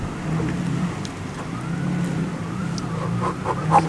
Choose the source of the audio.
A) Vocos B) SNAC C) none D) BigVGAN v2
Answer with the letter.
C